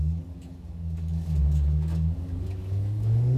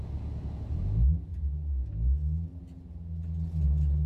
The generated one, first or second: first